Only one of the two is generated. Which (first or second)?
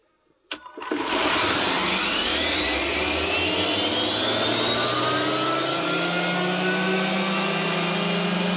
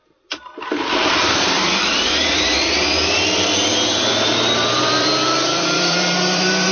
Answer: second